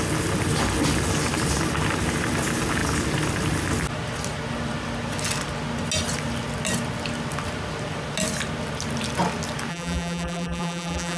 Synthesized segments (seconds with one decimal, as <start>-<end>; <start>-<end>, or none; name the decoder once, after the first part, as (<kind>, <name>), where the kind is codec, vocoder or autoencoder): 9.7-11.2 (vocoder, BigVGAN v2)